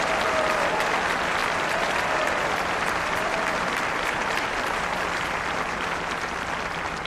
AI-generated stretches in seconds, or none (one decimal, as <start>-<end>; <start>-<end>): 1.4-5.2